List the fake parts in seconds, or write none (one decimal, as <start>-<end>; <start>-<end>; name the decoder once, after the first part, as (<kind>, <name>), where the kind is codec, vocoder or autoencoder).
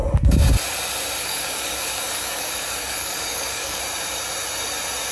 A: 1.2-3.8 (codec, DAC)